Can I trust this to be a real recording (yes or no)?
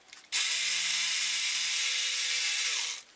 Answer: yes